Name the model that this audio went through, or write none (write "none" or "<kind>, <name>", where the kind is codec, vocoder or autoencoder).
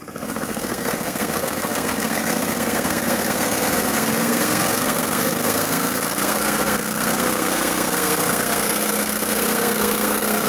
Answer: codec, SNAC